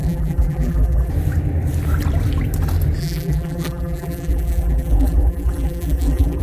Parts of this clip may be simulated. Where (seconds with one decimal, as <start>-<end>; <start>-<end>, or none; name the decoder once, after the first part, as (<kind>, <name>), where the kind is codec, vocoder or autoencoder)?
0.0-1.1 (vocoder, BigVGAN v2); 3.0-6.4